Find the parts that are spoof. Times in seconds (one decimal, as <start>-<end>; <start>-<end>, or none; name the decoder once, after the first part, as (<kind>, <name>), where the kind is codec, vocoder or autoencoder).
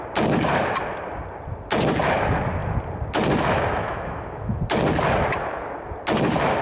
3.8-4.6 (autoencoder, DAC-VAE)